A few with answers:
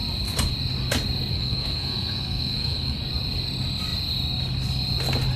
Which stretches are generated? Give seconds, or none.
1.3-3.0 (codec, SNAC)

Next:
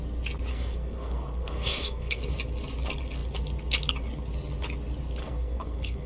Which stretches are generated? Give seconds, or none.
0.5-2.3 (codec, SNAC); 5.2-6.1

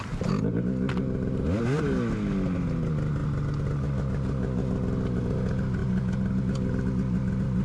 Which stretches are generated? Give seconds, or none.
none

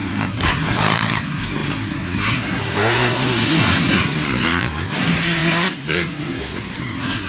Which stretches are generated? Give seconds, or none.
0.0-7.3 (codec, SNAC)

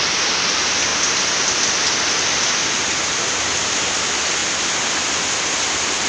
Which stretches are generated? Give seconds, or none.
none

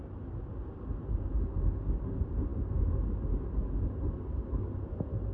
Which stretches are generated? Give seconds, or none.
none